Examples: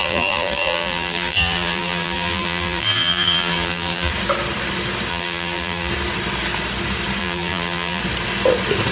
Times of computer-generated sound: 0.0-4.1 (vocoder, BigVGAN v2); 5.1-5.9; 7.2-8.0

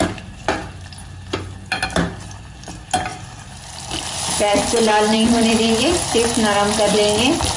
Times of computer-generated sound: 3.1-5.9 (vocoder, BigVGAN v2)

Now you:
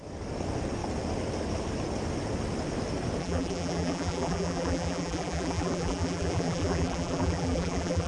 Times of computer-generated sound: 3.2-8.1 (vocoder, BigVGAN v2)